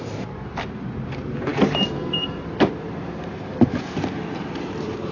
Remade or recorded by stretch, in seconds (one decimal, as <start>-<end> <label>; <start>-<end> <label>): 0.0-5.1 remade